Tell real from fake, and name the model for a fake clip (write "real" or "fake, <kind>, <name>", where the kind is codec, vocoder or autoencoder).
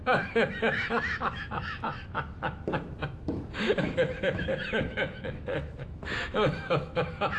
fake, autoencoder, DAC-VAE